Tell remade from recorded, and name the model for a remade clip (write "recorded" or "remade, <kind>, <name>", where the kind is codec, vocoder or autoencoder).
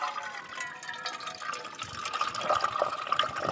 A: recorded